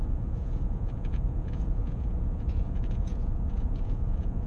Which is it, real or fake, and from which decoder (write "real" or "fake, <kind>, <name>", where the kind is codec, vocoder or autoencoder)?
fake, vocoder, Vocos